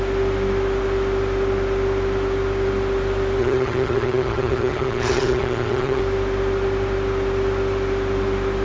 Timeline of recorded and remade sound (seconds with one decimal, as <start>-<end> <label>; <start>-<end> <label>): 0.0-3.4 recorded; 3.4-6.0 remade; 6.0-8.6 recorded